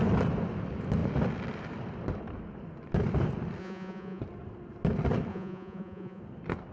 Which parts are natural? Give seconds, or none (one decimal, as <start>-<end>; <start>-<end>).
0.0-3.6; 4.2-5.3; 6.2-6.7